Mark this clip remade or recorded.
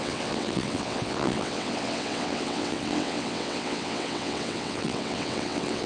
remade